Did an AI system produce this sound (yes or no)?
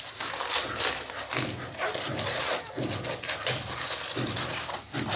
no